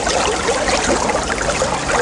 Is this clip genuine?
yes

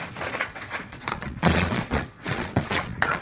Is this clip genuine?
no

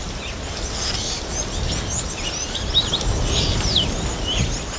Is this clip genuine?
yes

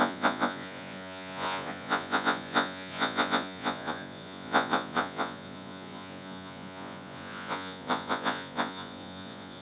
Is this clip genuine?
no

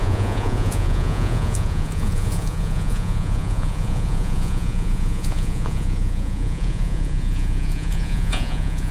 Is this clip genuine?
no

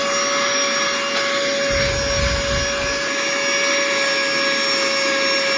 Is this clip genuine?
yes